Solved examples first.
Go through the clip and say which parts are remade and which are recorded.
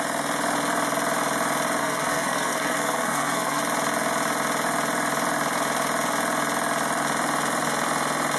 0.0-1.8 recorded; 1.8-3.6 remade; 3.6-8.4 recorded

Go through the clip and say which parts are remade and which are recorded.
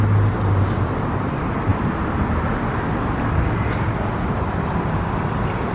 0.0-5.7 recorded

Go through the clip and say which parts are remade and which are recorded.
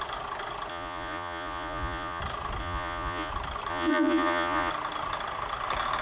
0.0-0.7 recorded; 0.7-2.2 remade; 2.2-2.6 recorded; 2.6-3.3 remade; 3.3-3.7 recorded; 3.7-4.7 remade; 4.7-6.0 recorded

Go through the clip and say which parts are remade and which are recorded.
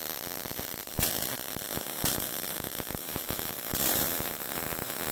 0.0-1.7 recorded; 1.7-5.1 remade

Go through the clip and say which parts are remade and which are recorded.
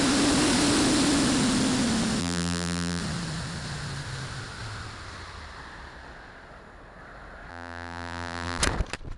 0.0-2.2 recorded; 2.2-3.0 remade; 3.0-7.5 recorded; 7.5-8.6 remade; 8.6-9.2 recorded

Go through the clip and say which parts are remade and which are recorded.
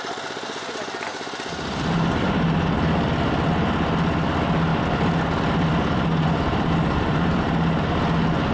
0.0-1.1 recorded; 1.1-3.5 remade; 3.5-4.7 recorded; 4.7-7.4 remade; 7.4-8.5 recorded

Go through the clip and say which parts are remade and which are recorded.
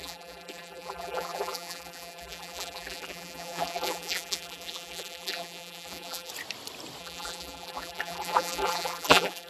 0.0-6.3 remade; 6.3-7.0 recorded; 7.0-9.5 remade